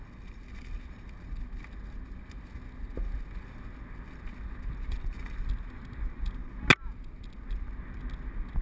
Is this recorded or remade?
recorded